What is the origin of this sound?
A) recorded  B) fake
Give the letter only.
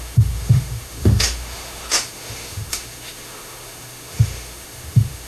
B